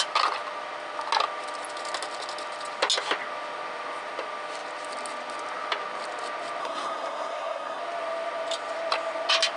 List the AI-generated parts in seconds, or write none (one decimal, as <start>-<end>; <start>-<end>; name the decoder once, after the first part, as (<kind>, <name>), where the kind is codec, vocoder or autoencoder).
6.6-7.8 (codec, SNAC)